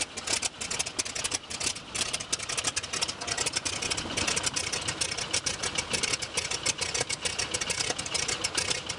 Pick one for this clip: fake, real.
real